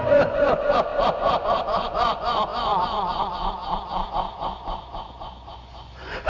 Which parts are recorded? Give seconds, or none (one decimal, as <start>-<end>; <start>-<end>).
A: 3.6-4.1